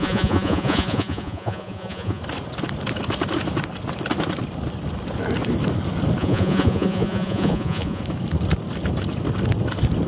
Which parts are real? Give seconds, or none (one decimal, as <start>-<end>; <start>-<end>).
2.2-6.2; 8.0-10.1